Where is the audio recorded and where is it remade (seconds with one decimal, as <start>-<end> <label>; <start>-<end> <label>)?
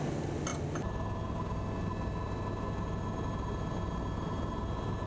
0.0-5.1 recorded